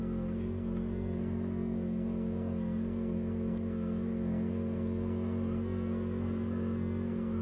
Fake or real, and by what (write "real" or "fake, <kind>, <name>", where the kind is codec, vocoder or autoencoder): fake, codec, SNAC